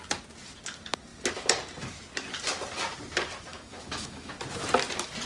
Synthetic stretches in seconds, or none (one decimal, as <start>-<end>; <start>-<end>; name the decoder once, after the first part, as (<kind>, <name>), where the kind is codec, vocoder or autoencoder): 3.5-4.3 (autoencoder, DAC-VAE)